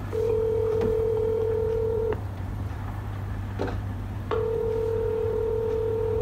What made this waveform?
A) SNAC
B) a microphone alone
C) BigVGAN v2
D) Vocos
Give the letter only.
C